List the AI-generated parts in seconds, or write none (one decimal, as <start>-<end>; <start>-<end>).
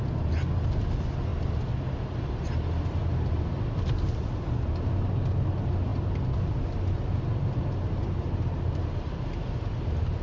none